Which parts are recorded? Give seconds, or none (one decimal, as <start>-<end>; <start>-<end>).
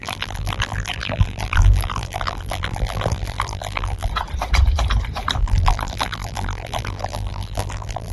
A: 4.1-5.4